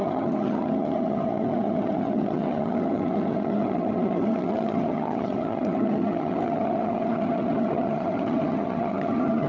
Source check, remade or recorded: remade